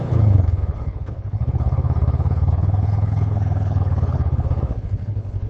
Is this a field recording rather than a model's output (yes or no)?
no